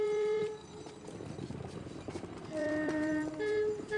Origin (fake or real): fake